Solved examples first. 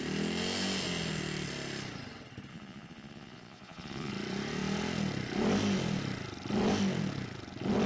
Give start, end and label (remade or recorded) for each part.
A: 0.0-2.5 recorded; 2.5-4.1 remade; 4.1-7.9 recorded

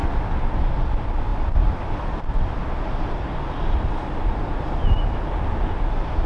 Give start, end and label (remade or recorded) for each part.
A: 0.0-6.3 remade

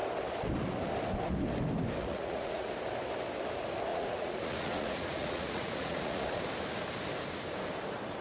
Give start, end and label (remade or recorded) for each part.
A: 0.0-2.0 recorded; 2.0-2.7 remade; 2.7-3.9 recorded; 3.9-6.4 remade; 6.4-8.2 recorded

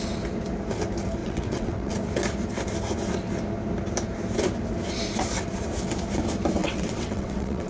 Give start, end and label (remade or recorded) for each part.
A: 0.0-1.2 recorded; 1.2-1.9 remade; 1.9-6.6 recorded; 6.6-7.7 remade

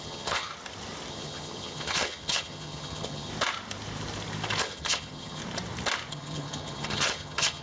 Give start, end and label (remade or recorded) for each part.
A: 0.0-0.5 remade; 0.5-1.1 recorded; 1.1-3.3 remade; 3.3-4.6 recorded; 4.6-5.4 remade; 5.4-6.1 recorded; 6.1-7.6 remade

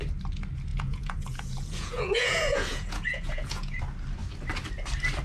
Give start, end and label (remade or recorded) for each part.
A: 0.0-0.7 recorded; 0.7-3.8 remade; 3.8-5.2 recorded

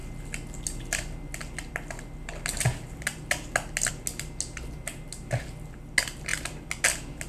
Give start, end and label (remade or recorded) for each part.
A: 0.0-7.3 recorded

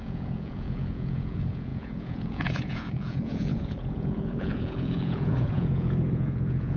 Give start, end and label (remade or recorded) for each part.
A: 0.0-6.8 remade